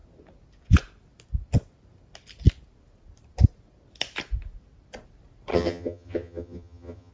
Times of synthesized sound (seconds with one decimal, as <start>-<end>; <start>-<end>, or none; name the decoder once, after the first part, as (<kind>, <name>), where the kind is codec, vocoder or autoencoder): 5.5-7.1 (vocoder, HiFi-GAN)